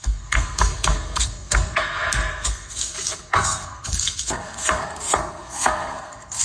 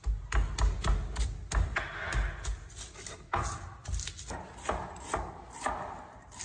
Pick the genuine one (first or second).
second